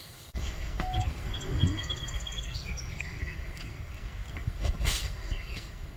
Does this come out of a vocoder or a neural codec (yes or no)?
yes